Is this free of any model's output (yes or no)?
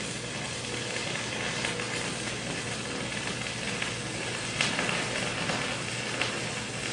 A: yes